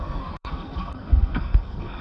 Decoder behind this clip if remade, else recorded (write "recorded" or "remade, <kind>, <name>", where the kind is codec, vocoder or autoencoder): remade, codec, SNAC